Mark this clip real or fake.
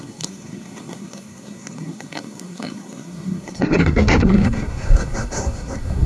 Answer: fake